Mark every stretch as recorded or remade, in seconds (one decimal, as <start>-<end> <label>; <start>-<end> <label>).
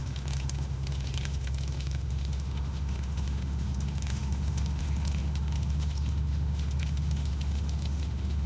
0.0-8.5 remade